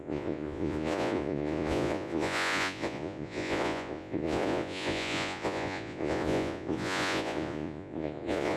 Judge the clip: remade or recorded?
remade